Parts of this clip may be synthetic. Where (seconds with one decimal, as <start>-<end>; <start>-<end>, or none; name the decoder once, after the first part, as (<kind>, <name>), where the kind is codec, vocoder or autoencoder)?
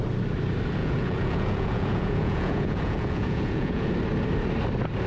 0.8-3.9 (vocoder, Vocos)